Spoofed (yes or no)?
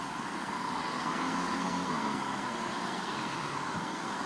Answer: yes